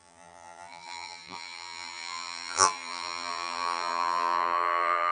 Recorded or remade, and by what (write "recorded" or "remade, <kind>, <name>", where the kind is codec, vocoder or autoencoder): remade, vocoder, BigVGAN v2